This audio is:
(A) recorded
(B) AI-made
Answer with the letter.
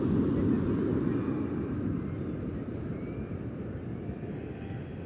A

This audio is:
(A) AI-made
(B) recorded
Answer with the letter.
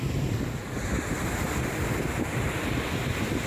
B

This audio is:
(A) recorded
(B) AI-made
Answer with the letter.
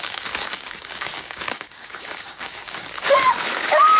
B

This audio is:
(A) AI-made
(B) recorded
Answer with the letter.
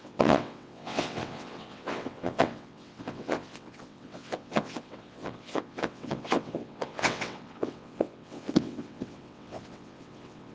A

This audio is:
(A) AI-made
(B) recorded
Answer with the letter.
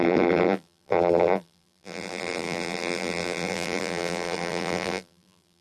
A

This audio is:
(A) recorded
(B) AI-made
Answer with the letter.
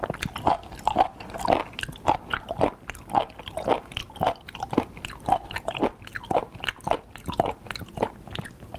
A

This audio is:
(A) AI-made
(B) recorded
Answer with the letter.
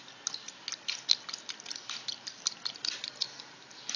B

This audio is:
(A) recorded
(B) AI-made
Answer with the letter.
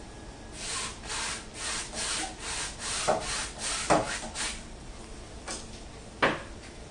A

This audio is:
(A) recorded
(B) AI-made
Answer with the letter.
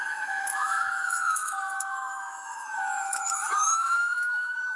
B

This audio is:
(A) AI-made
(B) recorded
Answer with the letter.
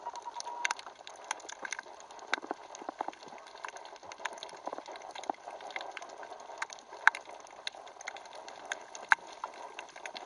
B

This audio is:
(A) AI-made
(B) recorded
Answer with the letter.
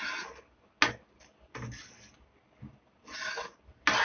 B